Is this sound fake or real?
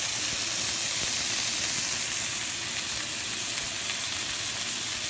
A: real